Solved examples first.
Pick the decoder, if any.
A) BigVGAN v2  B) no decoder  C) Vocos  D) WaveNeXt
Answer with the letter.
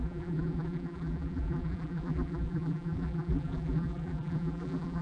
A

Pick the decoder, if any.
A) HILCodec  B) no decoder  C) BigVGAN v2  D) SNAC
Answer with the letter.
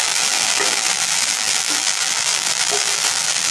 C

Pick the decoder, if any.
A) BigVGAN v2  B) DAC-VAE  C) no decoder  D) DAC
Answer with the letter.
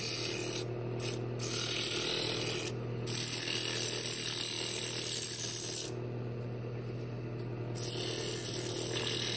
C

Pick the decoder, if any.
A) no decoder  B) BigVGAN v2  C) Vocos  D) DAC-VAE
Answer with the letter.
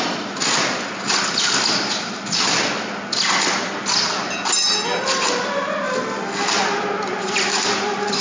A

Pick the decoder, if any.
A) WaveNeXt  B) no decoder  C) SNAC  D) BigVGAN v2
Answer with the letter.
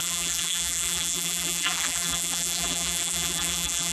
D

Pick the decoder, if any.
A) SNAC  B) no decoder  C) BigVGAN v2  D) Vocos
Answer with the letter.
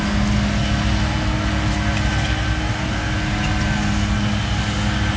B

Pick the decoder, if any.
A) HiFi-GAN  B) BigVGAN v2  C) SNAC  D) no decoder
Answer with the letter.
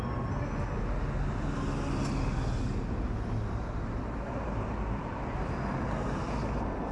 D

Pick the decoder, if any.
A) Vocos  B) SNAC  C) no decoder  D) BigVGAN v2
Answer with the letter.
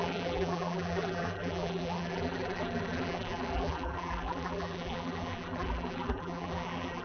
D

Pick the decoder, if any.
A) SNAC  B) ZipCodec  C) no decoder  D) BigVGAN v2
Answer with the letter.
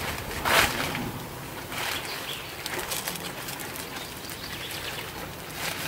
C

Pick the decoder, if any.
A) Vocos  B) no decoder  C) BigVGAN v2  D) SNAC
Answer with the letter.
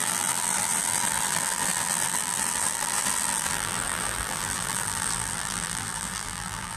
C